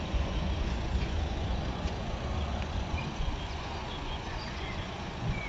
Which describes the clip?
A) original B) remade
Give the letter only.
B